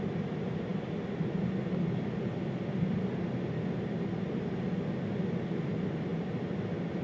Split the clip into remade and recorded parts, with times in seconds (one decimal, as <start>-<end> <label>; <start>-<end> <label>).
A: 0.0-7.0 recorded